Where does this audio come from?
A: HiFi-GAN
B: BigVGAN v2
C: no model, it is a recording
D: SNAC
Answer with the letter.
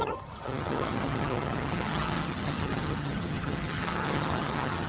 A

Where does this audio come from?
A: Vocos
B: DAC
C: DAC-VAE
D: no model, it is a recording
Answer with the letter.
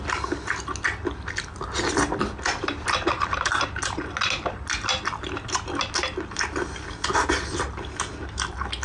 D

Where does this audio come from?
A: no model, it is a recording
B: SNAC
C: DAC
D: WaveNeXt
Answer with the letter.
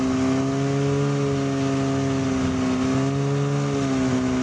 A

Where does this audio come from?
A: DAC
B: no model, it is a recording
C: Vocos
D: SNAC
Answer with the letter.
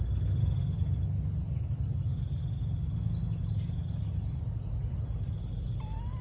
B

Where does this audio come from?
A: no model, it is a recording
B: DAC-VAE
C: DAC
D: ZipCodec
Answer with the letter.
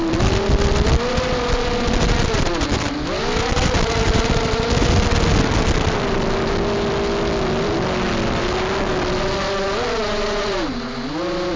A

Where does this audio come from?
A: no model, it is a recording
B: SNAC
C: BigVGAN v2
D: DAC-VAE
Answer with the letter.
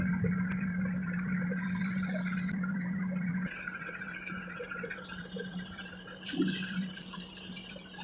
C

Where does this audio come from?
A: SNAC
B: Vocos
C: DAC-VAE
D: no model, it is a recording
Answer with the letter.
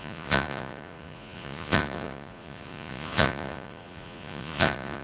B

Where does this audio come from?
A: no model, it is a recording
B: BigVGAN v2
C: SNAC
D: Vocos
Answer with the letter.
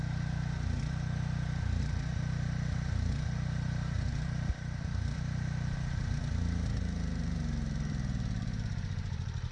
B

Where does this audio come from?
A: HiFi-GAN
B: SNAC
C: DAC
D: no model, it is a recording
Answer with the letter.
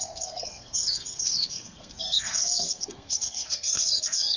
B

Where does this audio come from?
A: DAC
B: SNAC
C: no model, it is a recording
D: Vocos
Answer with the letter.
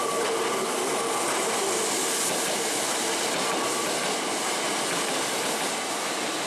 C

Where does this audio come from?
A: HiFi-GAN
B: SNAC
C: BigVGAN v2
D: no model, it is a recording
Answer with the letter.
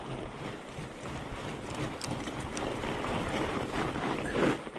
C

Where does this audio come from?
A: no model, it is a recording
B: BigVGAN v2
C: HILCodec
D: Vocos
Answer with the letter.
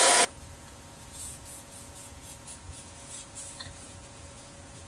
D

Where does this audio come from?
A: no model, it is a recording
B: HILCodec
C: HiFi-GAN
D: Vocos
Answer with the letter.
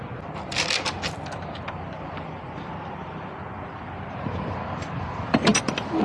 A